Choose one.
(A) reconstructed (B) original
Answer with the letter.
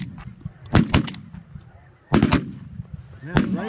B